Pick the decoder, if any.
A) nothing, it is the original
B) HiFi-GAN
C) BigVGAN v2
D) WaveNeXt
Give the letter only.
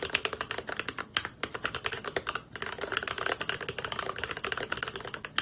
A